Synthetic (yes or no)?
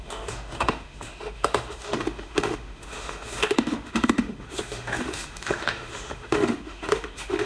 yes